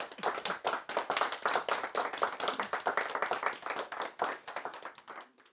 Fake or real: real